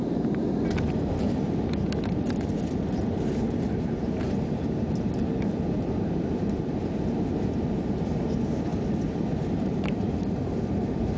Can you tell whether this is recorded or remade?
remade